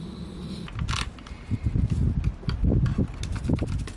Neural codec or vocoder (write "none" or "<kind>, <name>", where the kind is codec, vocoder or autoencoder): none